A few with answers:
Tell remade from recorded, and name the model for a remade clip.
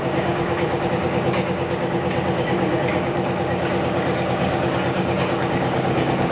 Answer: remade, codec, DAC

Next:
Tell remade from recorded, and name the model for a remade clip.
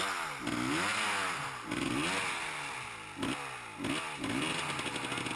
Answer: recorded